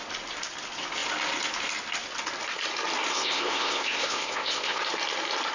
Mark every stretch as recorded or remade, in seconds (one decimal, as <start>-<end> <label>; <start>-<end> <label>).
0.0-3.1 recorded; 3.1-4.8 remade; 4.8-5.5 recorded